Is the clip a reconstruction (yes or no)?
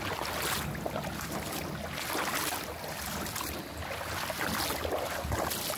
no